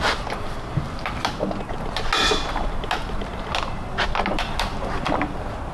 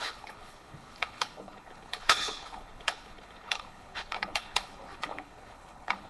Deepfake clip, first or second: second